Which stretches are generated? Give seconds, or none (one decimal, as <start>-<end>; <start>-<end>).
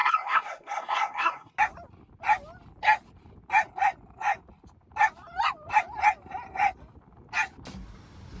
0.0-1.5